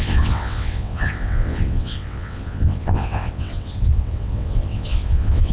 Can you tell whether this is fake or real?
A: fake